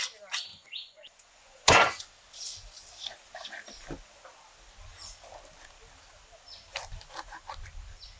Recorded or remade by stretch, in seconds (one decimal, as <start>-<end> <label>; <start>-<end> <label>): 0.0-0.5 recorded; 0.5-2.0 remade; 2.0-8.2 recorded